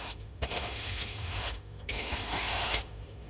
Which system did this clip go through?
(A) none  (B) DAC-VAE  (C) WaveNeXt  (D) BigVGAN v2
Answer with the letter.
B